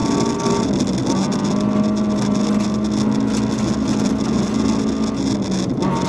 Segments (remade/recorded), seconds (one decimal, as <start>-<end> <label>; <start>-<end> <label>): 0.0-6.1 recorded